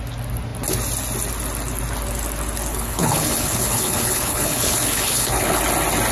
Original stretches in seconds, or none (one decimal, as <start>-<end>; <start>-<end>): 0.0-2.7; 5.6-6.1